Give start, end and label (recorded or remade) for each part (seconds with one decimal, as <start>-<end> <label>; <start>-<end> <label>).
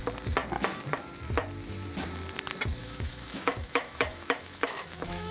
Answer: 0.0-2.8 recorded; 2.8-5.3 remade